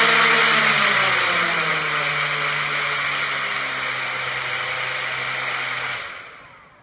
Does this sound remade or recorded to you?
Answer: recorded